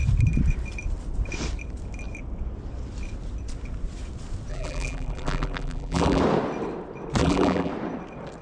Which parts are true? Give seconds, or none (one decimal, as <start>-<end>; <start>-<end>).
0.0-4.5; 6.2-7.2; 7.7-8.4